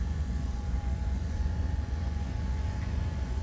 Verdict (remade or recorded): remade